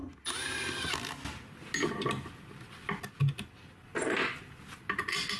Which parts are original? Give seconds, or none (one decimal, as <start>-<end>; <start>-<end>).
0.0-5.4